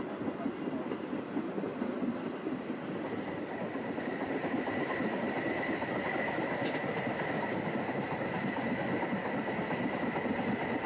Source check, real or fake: real